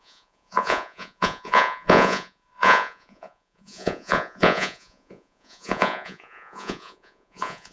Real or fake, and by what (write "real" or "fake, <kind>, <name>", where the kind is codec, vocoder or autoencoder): fake, vocoder, Vocos